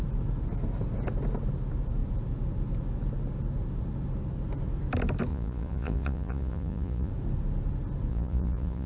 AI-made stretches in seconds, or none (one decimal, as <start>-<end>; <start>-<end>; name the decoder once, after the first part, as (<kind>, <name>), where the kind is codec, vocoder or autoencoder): 5.3-7.1 (vocoder, Vocos); 8.1-8.9